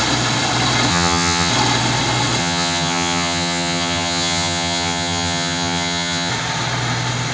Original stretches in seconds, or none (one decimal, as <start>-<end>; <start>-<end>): 0.0-0.9; 1.5-2.4; 6.3-7.3